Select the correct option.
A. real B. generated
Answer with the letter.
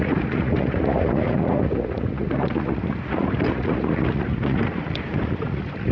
B